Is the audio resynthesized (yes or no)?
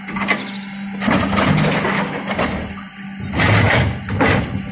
no